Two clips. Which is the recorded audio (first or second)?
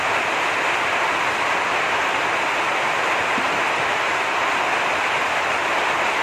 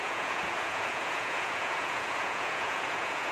first